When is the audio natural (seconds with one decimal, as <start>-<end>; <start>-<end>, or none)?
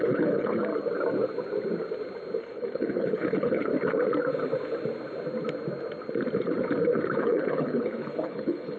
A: 0.7-2.4; 3.7-7.2